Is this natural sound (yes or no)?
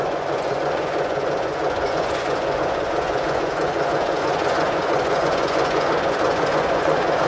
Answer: no